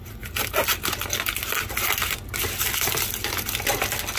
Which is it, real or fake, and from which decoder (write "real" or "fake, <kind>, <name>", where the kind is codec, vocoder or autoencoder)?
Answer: real